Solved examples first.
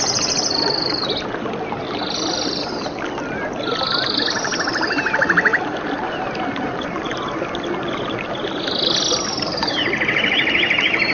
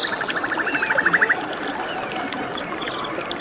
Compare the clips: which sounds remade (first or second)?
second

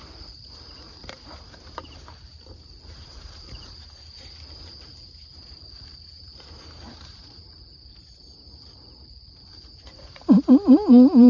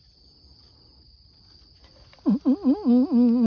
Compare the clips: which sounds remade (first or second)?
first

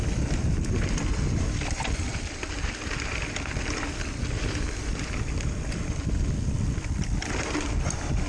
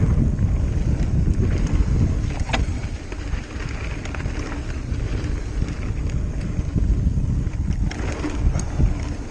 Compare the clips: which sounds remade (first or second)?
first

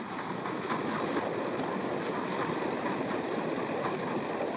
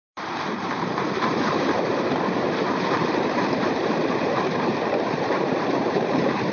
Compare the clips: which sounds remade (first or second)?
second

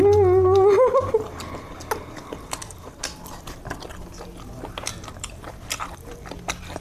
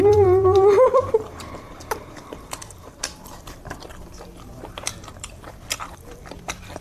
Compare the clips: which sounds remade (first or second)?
second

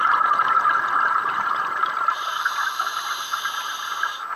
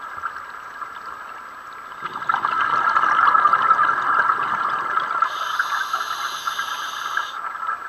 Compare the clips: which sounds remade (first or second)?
first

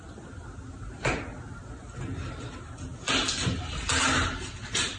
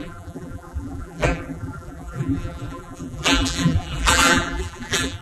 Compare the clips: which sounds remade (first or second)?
second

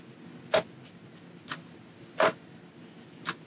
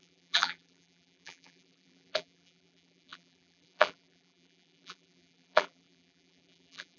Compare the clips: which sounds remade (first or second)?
second